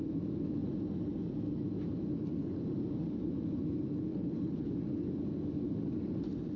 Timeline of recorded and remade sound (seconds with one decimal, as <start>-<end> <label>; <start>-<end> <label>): 0.0-4.1 recorded; 4.1-4.7 remade; 4.7-6.6 recorded